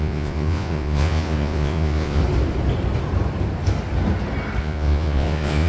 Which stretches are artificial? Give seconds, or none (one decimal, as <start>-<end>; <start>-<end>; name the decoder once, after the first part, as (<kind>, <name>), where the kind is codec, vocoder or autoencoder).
0.0-2.2 (vocoder, Vocos); 4.6-5.7